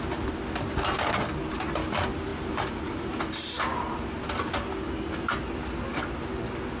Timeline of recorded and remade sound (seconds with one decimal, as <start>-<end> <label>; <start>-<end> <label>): 0.0-6.8 recorded